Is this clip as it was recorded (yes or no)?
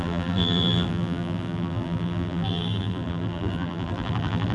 no